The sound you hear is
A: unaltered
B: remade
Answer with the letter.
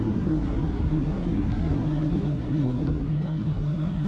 B